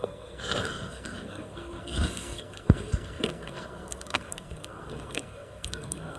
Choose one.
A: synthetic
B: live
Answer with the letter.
A